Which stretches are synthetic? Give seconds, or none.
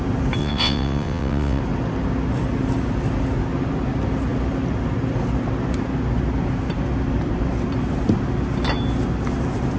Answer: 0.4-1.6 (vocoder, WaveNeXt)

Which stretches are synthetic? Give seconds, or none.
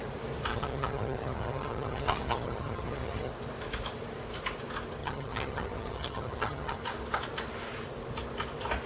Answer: 0.5-3.3 (vocoder, HiFi-GAN); 5.0-6.8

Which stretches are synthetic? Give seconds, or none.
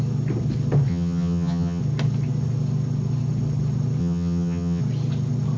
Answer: 0.9-1.8 (vocoder, HiFi-GAN); 4.0-4.8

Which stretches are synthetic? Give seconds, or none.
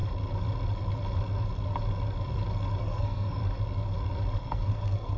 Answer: 2.8-3.4 (codec, SNAC); 4.4-5.2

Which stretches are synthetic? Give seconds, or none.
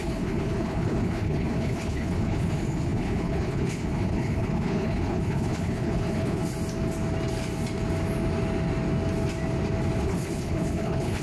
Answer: 0.0-6.4 (codec, HILCodec); 10.0-11.2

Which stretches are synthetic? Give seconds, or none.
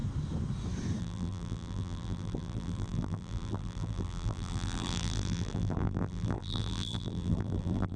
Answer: 1.0-8.0 (vocoder, BigVGAN v2)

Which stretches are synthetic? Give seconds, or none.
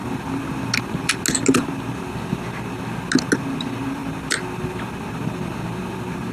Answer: none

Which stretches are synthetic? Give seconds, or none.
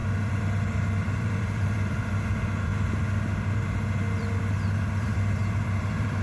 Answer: 0.0-2.7 (vocoder, BigVGAN v2); 4.2-6.2